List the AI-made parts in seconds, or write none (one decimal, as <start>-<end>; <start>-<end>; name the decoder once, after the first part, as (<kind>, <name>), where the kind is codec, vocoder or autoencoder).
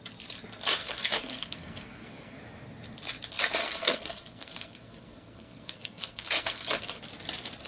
0.8-2.4 (codec, SNAC); 3.6-7.0